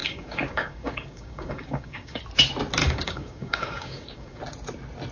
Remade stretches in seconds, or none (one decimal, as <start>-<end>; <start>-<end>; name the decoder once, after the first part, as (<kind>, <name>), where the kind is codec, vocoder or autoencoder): 0.0-2.2 (codec, DAC); 2.8-4.4